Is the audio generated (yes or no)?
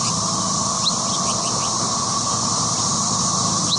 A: no